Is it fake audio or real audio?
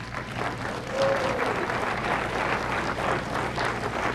fake